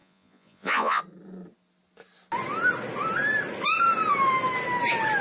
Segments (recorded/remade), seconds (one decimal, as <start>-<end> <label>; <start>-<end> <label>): 0.0-1.0 remade; 1.0-5.2 recorded